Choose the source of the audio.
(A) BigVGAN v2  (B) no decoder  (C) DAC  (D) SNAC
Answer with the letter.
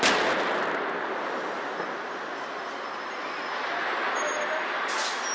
B